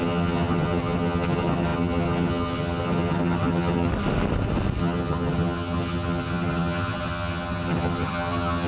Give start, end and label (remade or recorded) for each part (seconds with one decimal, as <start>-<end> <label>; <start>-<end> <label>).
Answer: 0.0-3.9 remade; 3.9-4.8 recorded; 4.8-8.7 remade